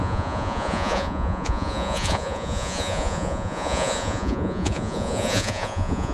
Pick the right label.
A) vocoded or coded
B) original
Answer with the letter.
A